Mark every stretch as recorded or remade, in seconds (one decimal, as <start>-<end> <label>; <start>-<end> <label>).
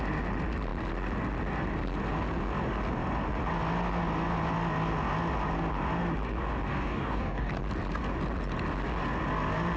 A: 0.0-6.7 recorded; 6.7-7.5 remade; 7.5-9.8 recorded